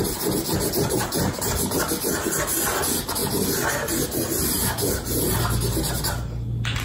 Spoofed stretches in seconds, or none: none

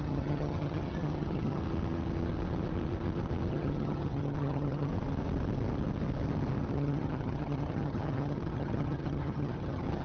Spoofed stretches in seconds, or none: 0.0-1.6 (vocoder, HiFi-GAN); 3.5-4.9; 6.7-10.0